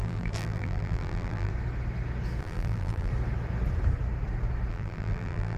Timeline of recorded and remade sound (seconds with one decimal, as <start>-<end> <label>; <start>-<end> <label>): 0.0-1.5 remade; 1.5-2.4 recorded; 2.4-3.1 remade; 3.1-4.7 recorded; 4.7-5.6 remade